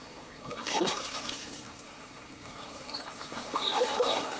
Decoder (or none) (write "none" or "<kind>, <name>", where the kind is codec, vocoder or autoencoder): codec, SNAC